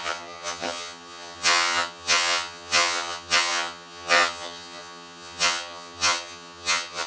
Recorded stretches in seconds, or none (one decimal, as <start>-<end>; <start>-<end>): none